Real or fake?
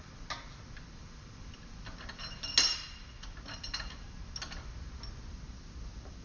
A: real